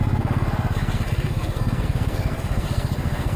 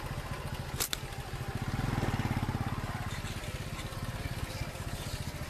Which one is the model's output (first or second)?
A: first